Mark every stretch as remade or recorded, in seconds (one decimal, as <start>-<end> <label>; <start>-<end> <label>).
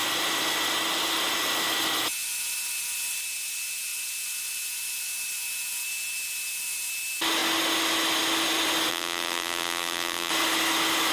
0.0-8.9 recorded; 8.9-10.3 remade; 10.3-11.1 recorded